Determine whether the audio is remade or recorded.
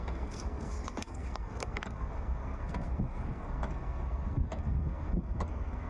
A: remade